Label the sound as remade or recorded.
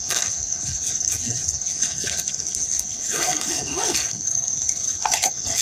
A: remade